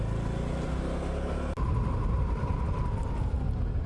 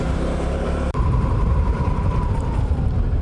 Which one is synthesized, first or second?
second